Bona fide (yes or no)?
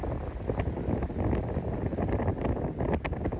yes